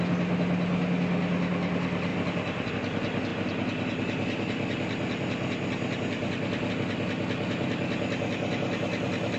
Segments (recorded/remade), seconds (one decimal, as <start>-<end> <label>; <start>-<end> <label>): 0.0-2.1 recorded; 2.1-2.7 remade; 2.7-9.4 recorded